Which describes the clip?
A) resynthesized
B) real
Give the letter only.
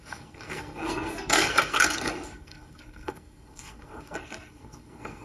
A